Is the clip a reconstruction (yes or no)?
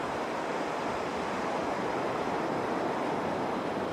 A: no